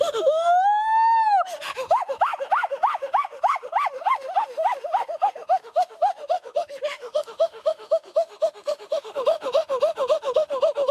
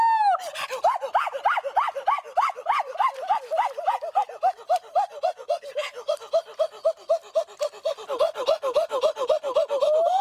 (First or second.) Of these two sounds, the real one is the second